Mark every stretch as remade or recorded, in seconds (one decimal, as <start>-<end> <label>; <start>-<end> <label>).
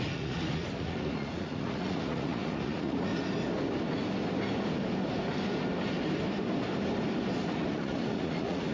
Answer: 0.0-3.1 remade; 3.1-7.5 recorded; 7.5-8.7 remade